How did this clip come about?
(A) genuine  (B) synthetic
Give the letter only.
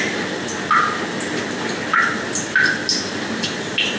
A